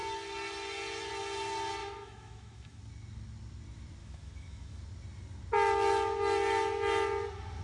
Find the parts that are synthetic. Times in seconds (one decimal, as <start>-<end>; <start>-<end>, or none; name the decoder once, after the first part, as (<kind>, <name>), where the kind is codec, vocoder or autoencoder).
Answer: 1.8-2.8 (autoencoder, DAC-VAE); 4.0-4.8